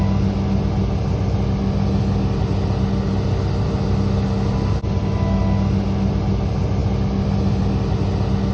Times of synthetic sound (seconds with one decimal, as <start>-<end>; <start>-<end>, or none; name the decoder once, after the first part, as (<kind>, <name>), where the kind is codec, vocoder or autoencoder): none

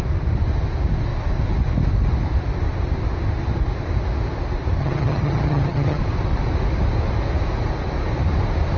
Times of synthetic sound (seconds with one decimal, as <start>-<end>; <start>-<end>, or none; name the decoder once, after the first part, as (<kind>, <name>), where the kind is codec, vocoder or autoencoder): 4.8-6.0 (vocoder, HiFi-GAN)

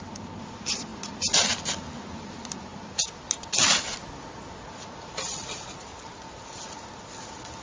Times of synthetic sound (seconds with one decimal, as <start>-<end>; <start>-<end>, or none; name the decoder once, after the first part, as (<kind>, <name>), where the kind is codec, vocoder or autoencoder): none

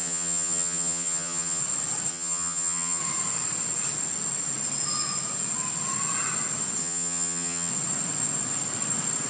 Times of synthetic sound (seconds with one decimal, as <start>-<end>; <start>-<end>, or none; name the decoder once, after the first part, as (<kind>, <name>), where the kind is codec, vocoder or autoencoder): 0.0-1.6 (vocoder, HiFi-GAN); 2.1-3.0; 6.8-7.7

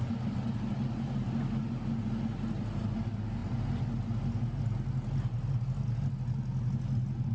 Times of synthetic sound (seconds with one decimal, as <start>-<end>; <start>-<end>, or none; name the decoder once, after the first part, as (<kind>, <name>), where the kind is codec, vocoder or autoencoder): none

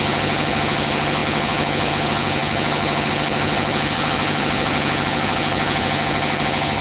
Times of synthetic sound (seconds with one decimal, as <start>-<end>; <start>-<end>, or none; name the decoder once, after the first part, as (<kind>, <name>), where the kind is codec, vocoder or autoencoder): 0.0-6.8 (vocoder, HiFi-GAN)

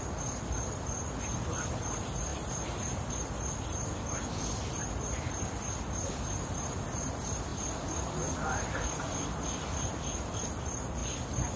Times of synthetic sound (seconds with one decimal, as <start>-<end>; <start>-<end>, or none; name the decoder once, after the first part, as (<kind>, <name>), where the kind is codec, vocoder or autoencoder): none